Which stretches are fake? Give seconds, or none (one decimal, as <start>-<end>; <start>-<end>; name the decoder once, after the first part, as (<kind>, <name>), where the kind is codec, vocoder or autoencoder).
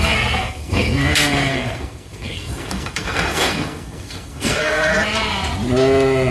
0.0-4.9 (codec, SNAC)